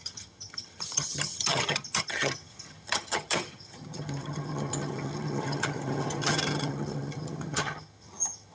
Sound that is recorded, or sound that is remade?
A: remade